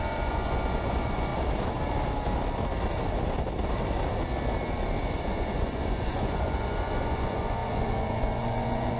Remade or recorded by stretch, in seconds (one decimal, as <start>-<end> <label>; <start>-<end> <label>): 0.0-1.3 remade; 1.3-5.2 recorded; 5.2-9.0 remade